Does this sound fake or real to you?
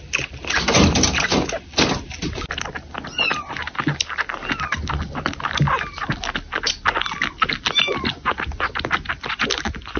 real